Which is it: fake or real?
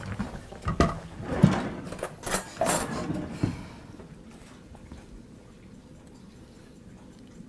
real